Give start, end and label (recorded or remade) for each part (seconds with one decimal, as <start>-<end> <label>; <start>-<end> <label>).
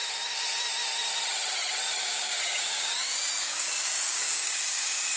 0.0-2.0 recorded; 2.0-5.2 remade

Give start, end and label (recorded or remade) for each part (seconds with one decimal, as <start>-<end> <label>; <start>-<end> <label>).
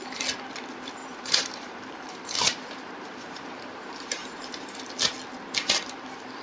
0.0-1.0 recorded; 1.0-4.8 remade; 4.8-6.4 recorded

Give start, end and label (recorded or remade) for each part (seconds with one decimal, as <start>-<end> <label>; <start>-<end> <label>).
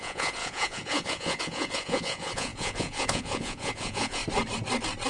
0.0-4.2 remade; 4.2-5.1 recorded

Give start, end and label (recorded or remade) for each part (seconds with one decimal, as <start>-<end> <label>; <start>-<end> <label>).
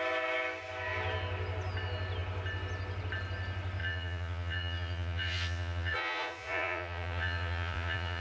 0.0-3.8 recorded; 3.8-8.2 remade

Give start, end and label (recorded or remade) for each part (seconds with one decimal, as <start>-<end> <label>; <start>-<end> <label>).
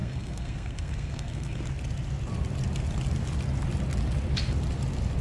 0.0-1.6 remade; 1.6-5.2 recorded